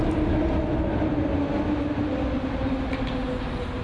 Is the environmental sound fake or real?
real